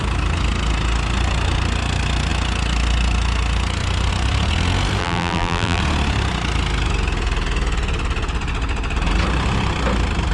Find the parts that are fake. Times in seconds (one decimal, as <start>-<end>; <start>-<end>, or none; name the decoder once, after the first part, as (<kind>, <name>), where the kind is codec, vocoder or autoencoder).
5.0-5.8 (vocoder, BigVGAN v2)